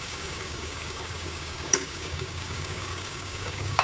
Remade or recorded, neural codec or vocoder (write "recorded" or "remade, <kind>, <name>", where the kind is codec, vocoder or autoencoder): remade, codec, DAC